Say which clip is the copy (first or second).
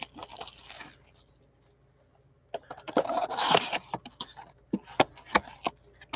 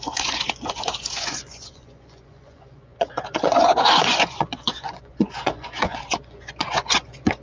second